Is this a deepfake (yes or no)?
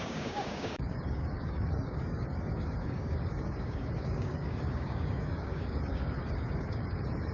yes